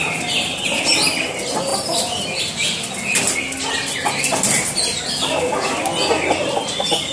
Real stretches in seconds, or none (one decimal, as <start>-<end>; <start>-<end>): 0.0-7.1

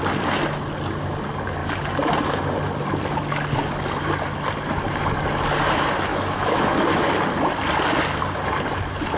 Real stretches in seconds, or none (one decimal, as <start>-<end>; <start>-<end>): 0.0-6.1; 7.1-9.2